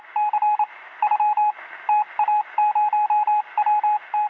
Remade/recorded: recorded